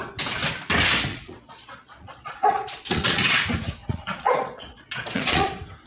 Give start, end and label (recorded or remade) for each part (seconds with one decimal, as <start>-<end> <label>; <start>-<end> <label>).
0.0-1.1 recorded; 1.1-3.4 remade; 3.4-3.8 recorded; 3.8-5.5 remade; 5.5-5.9 recorded